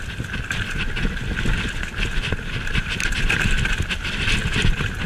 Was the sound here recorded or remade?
recorded